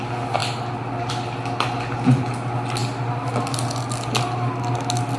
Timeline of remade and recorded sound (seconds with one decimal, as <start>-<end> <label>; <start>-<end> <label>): 0.0-5.2 recorded